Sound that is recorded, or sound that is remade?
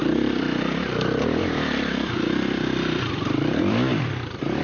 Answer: remade